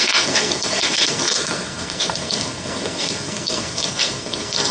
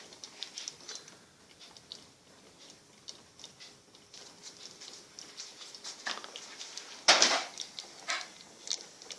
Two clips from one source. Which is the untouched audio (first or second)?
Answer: second